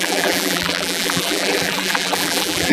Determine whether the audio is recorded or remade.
remade